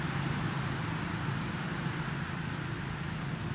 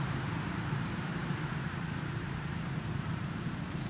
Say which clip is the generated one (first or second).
second